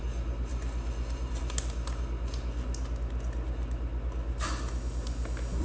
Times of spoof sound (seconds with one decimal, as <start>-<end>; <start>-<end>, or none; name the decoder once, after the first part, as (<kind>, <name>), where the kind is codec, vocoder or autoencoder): 0.5-1.4 (vocoder, BigVGAN v2)